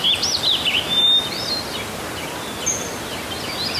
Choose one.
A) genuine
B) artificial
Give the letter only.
A